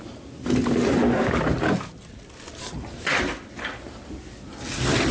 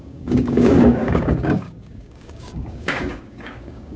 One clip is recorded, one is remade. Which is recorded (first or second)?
first